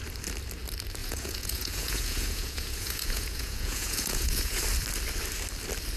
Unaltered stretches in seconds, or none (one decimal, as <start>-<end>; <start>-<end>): 0.0-1.0; 4.6-6.0